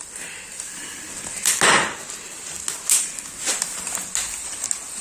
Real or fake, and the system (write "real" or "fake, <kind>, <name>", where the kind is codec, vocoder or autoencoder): real